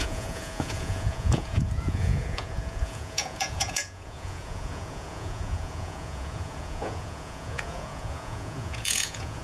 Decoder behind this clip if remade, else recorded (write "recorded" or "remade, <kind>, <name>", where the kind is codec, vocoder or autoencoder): remade, vocoder, Vocos